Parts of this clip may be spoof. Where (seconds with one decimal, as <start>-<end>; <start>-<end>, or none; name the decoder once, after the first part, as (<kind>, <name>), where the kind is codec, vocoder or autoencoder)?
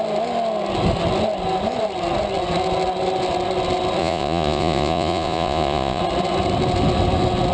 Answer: 4.0-6.0 (vocoder, Vocos)